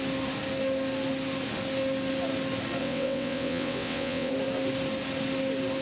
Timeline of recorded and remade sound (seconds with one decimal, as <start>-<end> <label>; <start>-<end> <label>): 0.0-2.8 recorded; 2.8-4.3 remade; 4.3-5.8 recorded